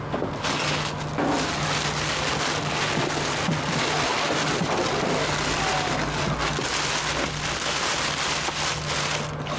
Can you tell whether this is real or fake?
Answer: real